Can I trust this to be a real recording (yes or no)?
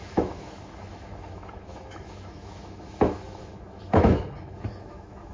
no